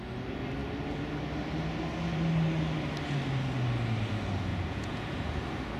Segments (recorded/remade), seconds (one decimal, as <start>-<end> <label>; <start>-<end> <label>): 0.0-4.5 recorded; 4.5-5.3 remade; 5.3-5.8 recorded